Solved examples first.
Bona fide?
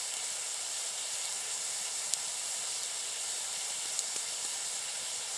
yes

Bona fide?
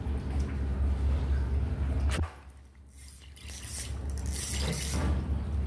yes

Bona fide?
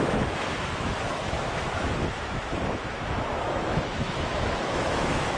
no